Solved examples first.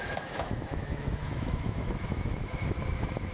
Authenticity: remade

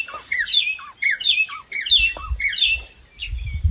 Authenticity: recorded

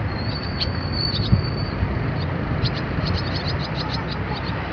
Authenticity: remade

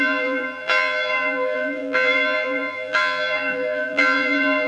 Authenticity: remade